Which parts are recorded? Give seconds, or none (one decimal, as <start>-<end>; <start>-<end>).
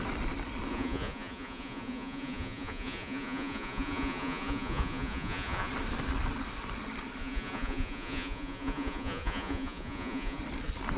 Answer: 0.0-0.7; 5.7-7.2; 10.4-11.0